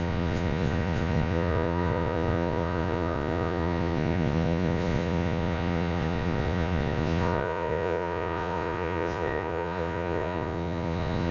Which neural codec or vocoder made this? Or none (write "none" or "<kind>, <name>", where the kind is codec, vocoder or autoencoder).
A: vocoder, Vocos